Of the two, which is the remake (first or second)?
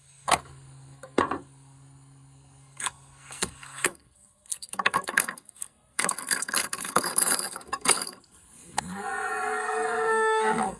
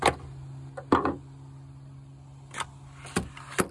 first